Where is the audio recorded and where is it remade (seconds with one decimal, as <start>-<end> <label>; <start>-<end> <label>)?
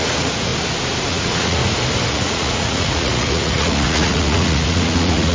0.0-0.5 remade; 0.5-1.1 recorded; 1.1-1.6 remade; 1.6-2.1 recorded; 2.1-5.3 remade